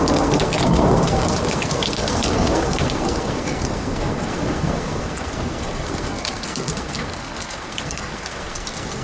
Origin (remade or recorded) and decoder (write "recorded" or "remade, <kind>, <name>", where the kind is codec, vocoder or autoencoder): remade, codec, SNAC